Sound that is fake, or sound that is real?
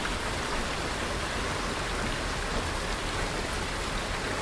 real